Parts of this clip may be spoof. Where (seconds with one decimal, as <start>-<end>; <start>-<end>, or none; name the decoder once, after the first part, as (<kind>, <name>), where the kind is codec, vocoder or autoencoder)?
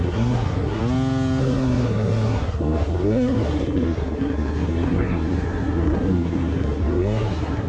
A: 0.0-0.8 (codec, SNAC); 1.4-7.7